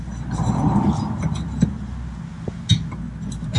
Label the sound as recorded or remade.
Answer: recorded